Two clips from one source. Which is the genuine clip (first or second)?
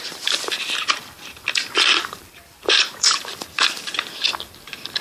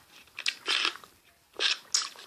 second